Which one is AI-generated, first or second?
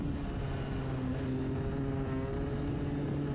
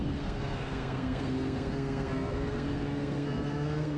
second